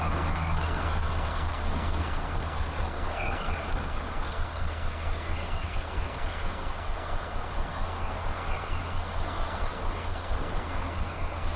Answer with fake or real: fake